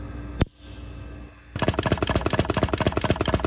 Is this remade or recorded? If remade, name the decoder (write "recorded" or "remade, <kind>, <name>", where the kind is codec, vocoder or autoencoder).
recorded